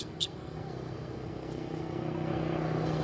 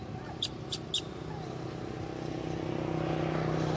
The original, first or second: second